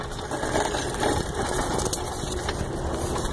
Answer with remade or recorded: recorded